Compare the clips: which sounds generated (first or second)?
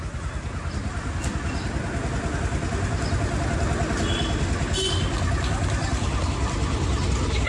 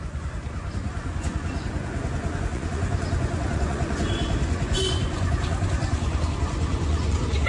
second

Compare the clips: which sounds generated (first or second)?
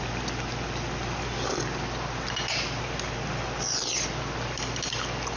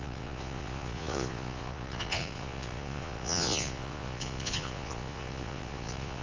second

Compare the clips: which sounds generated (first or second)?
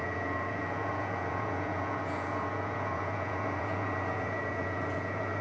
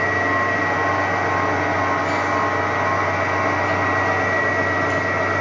first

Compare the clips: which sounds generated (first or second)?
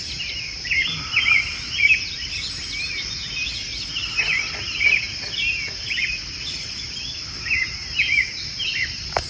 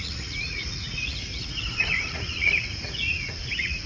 second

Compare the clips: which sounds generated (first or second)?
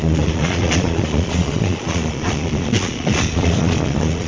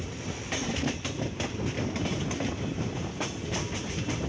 first